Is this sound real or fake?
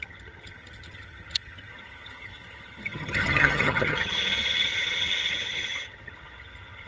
fake